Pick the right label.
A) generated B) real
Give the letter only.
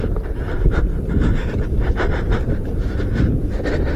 A